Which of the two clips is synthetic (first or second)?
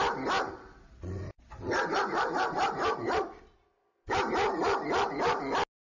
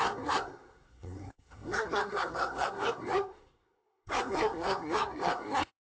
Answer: second